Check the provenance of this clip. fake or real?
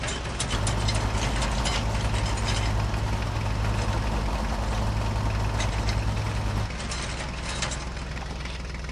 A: real